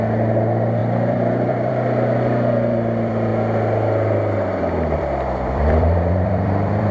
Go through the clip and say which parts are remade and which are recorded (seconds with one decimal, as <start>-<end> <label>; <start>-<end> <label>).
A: 0.0-3.3 remade; 3.3-4.6 recorded; 4.6-6.9 remade